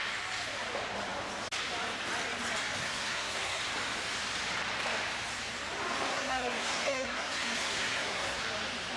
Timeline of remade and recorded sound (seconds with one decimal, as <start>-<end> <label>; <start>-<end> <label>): 0.0-2.8 recorded; 2.8-3.6 remade; 3.6-6.1 recorded; 6.1-8.4 remade; 8.4-9.0 recorded